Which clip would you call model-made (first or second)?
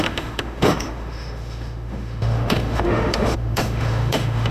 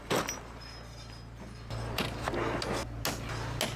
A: first